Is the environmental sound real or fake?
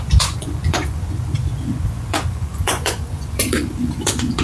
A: fake